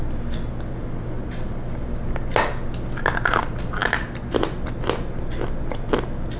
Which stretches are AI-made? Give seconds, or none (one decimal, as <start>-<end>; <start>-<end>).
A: none